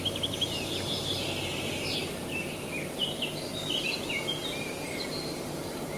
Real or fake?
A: real